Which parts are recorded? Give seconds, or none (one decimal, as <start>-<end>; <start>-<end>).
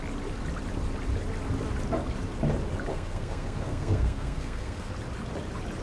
0.0-2.9; 4.9-5.8